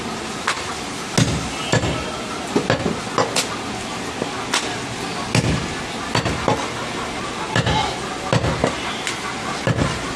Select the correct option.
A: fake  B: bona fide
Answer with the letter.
B